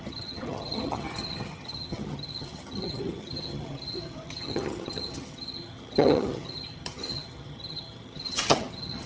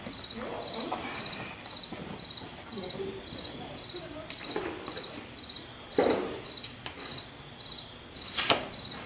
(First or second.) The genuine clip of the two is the second